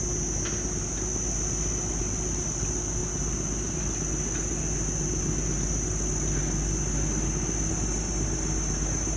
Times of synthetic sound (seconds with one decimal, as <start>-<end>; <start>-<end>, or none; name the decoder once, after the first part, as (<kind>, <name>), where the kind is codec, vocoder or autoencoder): none